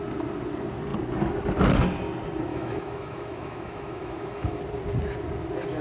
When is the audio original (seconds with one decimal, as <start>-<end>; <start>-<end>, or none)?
0.0-2.5; 4.6-5.8